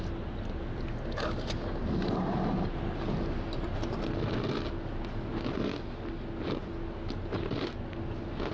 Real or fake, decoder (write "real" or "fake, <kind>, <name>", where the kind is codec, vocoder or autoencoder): real